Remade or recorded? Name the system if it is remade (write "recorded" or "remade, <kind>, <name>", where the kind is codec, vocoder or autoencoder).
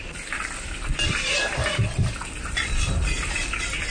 remade, vocoder, BigVGAN v2